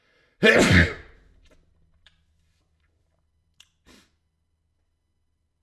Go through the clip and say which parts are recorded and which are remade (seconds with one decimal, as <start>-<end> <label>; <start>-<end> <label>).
0.0-5.6 recorded